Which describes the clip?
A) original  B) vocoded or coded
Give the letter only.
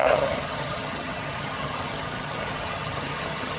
B